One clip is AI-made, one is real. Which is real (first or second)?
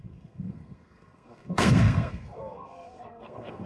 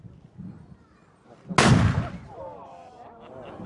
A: second